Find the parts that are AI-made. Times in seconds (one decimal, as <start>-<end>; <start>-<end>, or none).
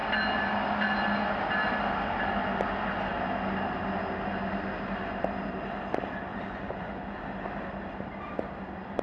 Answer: 6.3-7.2